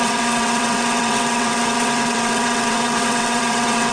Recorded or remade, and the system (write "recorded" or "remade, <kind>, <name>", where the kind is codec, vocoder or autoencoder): remade, vocoder, WaveNeXt